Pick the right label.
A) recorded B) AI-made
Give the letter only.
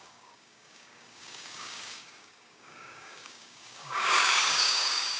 B